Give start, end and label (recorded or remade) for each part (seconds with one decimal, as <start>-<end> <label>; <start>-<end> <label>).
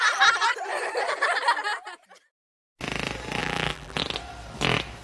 0.0-3.4 recorded; 3.4-4.0 remade; 4.0-5.0 recorded